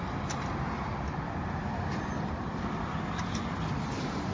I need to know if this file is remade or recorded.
recorded